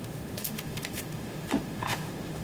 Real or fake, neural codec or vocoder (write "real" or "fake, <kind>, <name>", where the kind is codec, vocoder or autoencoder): fake, autoencoder, DAC-VAE